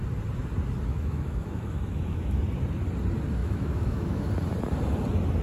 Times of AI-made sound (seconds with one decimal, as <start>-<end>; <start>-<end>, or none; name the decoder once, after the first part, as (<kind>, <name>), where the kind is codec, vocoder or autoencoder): 0.9-2.4 (autoencoder, DAC-VAE); 3.4-4.3